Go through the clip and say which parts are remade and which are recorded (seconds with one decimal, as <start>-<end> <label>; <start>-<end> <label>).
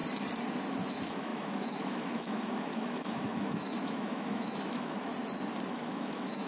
0.0-0.9 recorded; 0.9-5.1 remade; 5.1-5.7 recorded; 5.7-6.5 remade